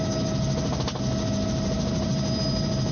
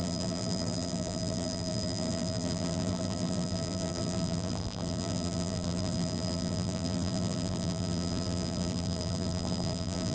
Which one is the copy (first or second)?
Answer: second